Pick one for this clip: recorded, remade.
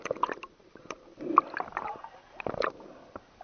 recorded